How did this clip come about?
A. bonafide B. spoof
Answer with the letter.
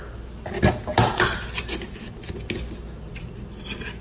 A